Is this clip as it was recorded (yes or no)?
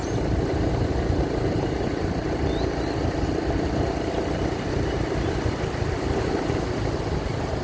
yes